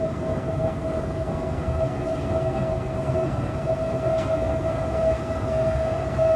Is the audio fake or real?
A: fake